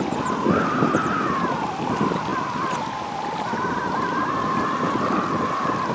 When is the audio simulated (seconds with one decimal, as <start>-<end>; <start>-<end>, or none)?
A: none

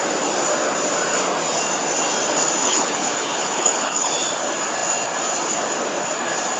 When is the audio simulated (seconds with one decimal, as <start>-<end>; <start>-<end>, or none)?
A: 2.6-4.1

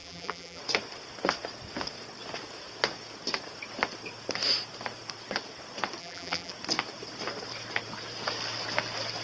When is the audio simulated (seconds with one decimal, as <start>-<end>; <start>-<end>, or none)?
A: 0.0-0.6; 6.0-6.5

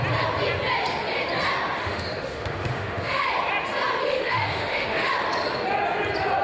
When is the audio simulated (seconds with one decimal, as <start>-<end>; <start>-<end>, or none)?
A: 1.8-3.3; 4.0-5.1

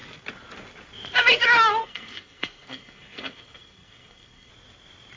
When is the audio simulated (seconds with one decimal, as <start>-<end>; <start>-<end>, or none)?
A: 1.8-4.5

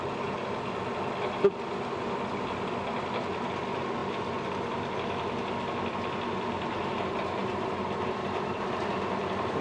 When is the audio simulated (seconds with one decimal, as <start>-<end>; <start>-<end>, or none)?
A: none